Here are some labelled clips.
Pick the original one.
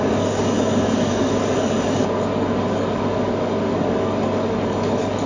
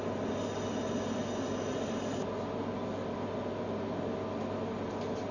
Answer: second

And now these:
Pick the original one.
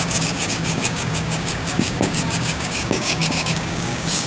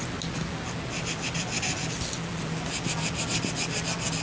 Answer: second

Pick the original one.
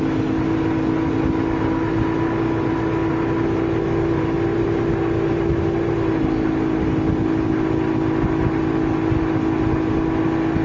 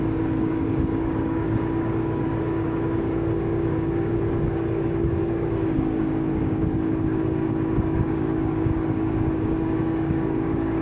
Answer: first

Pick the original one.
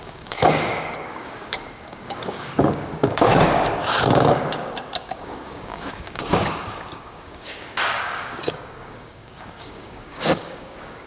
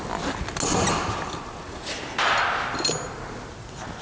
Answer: second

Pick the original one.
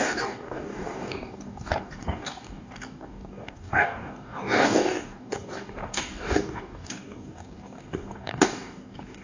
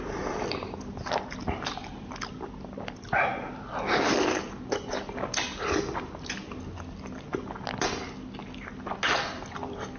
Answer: second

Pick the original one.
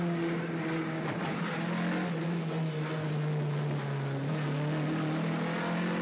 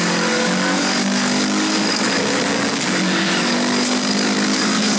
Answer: first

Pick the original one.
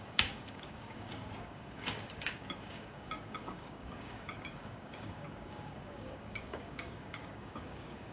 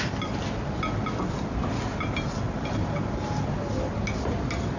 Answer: second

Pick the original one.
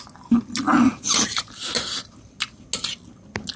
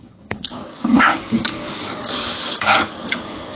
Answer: first